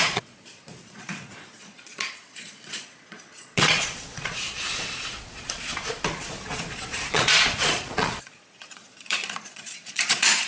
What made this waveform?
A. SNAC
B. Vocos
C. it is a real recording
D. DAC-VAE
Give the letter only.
B